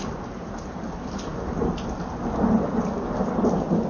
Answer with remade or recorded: recorded